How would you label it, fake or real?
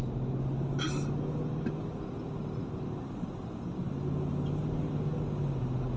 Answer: real